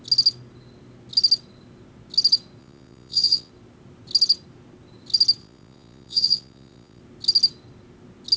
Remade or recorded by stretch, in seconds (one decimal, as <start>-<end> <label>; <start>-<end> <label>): 0.0-2.6 recorded; 2.6-3.5 remade; 3.5-5.4 recorded; 5.4-7.0 remade; 7.0-8.4 recorded

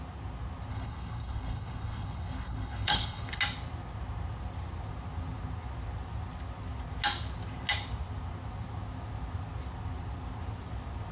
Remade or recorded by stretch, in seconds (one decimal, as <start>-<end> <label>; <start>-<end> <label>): 0.0-0.7 recorded; 0.7-3.3 remade; 3.3-11.1 recorded